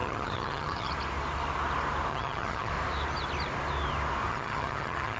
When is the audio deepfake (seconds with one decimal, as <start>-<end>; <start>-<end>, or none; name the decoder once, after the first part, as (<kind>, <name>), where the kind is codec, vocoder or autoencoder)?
0.0-0.9 (vocoder, HiFi-GAN); 2.1-2.7; 4.3-5.2